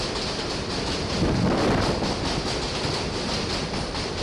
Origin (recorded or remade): recorded